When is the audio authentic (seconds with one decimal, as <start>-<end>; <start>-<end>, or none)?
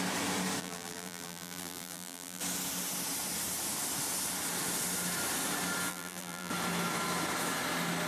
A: 0.0-0.6; 2.4-5.9; 6.5-8.1